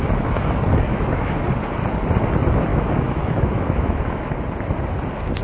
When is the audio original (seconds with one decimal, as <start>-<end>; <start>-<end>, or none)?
0.0-0.9; 1.4-2.7; 4.3-5.4